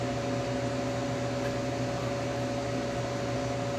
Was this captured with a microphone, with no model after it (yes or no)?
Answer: yes